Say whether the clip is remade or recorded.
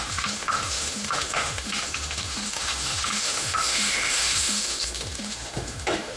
remade